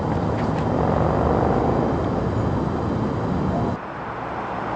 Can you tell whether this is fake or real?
real